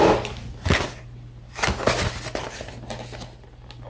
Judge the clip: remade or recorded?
recorded